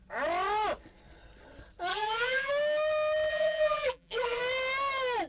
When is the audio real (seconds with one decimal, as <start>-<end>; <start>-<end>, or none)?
0.0-1.9; 2.5-3.3; 4.4-5.3